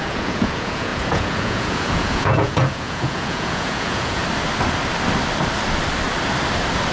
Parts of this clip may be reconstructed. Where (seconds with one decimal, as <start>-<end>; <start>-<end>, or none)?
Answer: 0.0-4.2